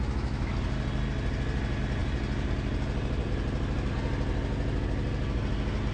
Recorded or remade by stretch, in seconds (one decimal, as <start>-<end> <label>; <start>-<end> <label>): 0.0-0.5 remade; 0.5-5.9 recorded